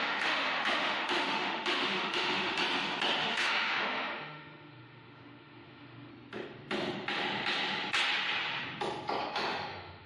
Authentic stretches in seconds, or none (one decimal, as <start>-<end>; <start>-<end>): 2.6-3.2; 6.1-9.2